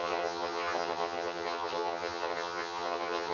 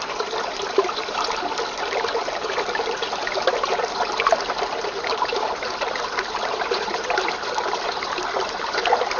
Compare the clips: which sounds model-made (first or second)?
first